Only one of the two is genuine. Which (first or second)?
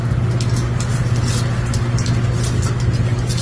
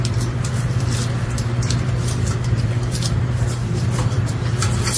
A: first